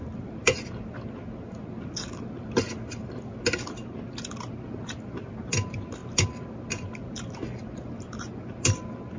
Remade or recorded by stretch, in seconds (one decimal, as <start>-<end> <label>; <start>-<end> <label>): 0.0-9.2 recorded